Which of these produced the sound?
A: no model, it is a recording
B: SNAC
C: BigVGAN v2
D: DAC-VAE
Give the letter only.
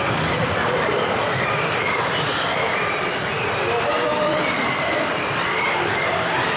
C